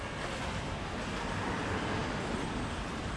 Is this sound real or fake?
real